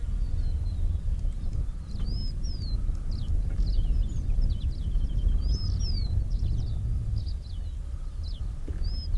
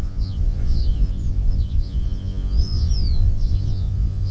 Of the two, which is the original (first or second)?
first